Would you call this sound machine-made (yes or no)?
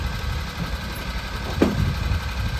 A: no